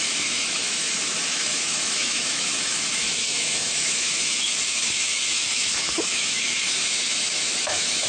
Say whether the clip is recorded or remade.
remade